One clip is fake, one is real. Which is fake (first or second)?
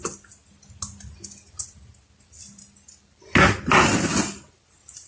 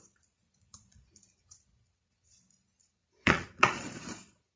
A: second